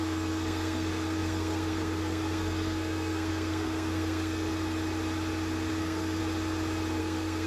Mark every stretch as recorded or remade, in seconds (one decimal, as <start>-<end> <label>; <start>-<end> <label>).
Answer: 0.0-4.5 remade; 4.5-5.7 recorded; 5.7-6.2 remade; 6.2-7.0 recorded; 7.0-7.5 remade